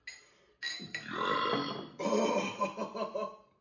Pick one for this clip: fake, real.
real